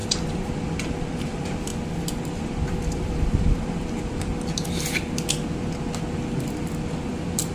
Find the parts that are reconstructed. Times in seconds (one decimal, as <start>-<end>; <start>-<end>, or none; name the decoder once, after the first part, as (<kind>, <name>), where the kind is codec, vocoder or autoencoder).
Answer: 0.0-1.7 (vocoder, BigVGAN v2); 2.3-4.3; 7.1-7.5